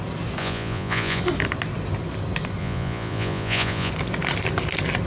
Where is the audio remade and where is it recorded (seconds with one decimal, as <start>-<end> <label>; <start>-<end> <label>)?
0.0-0.4 recorded; 0.4-1.2 remade; 1.2-2.6 recorded; 2.6-3.9 remade; 3.9-5.1 recorded